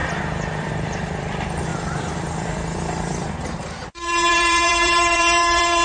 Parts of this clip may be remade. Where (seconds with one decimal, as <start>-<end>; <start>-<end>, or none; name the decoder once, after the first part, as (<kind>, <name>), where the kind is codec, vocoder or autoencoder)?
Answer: 0.0-5.8 (vocoder, BigVGAN v2)